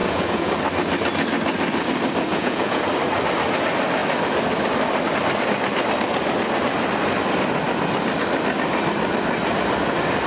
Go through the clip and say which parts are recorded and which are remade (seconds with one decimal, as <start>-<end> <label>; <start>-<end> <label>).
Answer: 0.0-0.5 remade; 0.5-2.3 recorded; 2.3-2.8 remade; 2.8-10.3 recorded